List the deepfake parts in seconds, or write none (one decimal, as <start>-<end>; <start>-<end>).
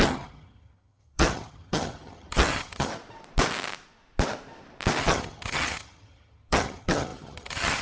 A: 0.0-2.9; 5.0-7.8